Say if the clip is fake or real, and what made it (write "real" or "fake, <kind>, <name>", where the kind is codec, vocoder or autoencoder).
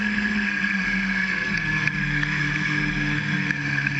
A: fake, codec, SNAC